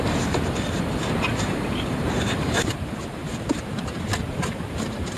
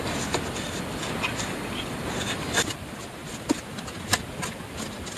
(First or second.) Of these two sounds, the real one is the second